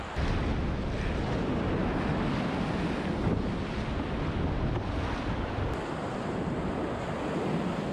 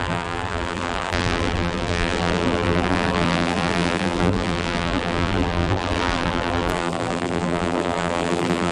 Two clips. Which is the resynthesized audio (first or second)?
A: second